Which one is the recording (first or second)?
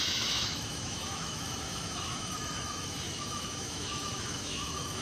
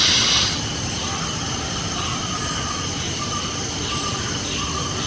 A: second